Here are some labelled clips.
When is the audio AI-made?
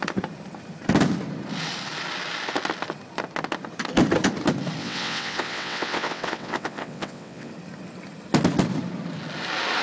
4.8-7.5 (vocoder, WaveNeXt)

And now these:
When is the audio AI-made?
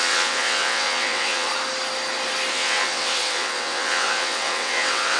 0.0-1.5 (vocoder, WaveNeXt); 2.5-5.2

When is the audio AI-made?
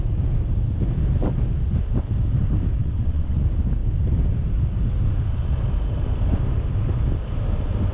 2.8-3.4 (vocoder, WaveNeXt)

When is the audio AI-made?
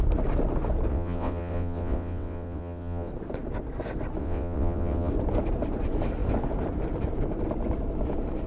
0.9-3.1 (vocoder, WaveNeXt); 4.2-5.1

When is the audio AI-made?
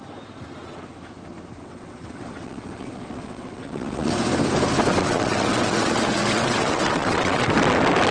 1.6-4.1 (vocoder, WaveNeXt); 5.0-7.5